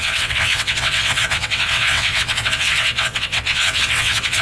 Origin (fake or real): fake